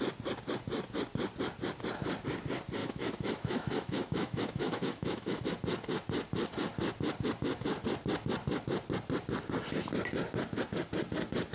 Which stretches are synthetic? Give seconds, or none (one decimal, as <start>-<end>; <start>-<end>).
2.8-5.4